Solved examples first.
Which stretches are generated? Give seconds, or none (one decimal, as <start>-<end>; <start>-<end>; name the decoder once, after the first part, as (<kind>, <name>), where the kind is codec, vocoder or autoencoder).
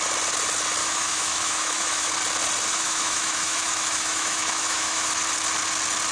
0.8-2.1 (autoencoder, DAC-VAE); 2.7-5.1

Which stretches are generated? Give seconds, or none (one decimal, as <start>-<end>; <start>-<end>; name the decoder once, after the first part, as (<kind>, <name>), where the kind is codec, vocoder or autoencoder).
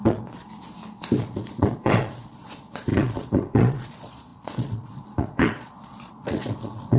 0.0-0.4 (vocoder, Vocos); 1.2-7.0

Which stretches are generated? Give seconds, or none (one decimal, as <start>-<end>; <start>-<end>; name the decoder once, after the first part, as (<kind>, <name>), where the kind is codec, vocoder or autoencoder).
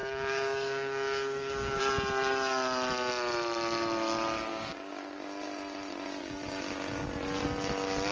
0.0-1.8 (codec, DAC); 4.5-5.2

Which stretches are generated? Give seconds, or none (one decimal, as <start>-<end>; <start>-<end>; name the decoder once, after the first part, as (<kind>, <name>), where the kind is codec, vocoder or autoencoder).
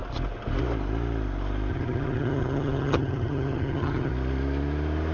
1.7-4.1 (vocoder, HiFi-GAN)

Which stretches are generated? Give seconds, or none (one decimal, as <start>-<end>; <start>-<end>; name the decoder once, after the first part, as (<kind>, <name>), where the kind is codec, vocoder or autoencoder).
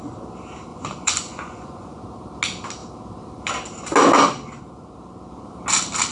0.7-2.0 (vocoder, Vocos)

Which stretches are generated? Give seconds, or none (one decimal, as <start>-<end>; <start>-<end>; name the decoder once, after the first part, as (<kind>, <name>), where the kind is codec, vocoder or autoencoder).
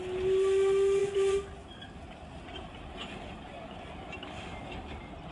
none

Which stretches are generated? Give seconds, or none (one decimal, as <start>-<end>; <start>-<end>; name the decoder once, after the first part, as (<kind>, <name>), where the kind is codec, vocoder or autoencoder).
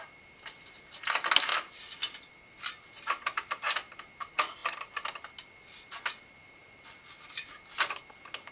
none